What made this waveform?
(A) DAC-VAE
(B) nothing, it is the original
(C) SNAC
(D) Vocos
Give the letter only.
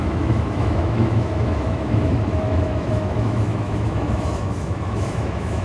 A